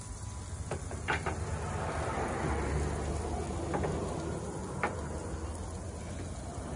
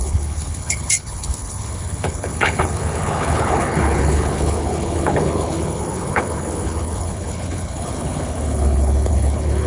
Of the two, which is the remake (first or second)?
second